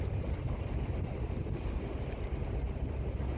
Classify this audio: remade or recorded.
recorded